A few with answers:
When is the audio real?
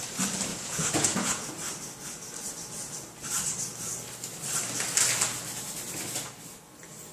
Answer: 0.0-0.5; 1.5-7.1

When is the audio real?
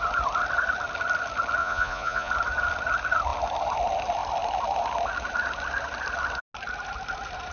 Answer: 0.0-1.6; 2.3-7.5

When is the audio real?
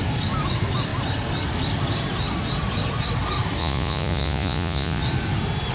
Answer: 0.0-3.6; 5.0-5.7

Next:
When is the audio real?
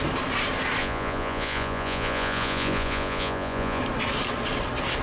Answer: 0.0-0.8; 3.8-5.0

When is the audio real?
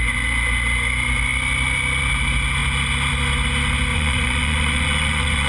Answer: 0.0-3.9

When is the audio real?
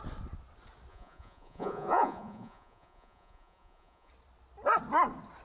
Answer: 0.0-0.9; 4.1-5.4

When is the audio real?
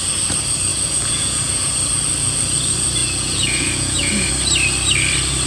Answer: 0.0-0.7; 1.7-3.0; 4.3-5.5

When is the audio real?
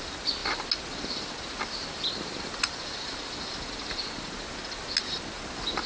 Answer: 0.0-5.9